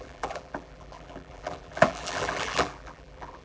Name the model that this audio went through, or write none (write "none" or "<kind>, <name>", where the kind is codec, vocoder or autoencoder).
vocoder, BigVGAN v2